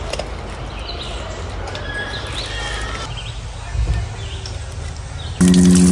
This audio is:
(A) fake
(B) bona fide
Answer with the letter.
B